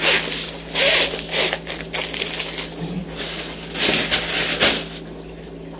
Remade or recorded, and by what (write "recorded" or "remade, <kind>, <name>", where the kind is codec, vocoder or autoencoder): recorded